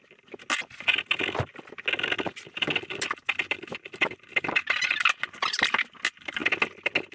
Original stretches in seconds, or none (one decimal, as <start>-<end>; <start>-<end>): 0.0-7.1